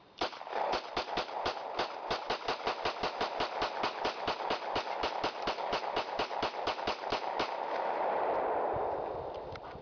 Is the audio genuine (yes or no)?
yes